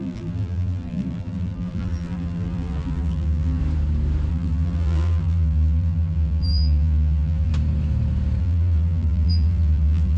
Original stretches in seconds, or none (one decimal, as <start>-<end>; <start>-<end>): 3.6-4.3; 7.5-8.4